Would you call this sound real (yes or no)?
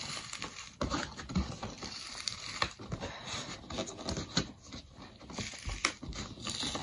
no